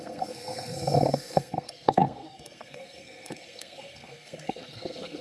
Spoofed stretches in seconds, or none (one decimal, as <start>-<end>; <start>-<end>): 0.0-5.2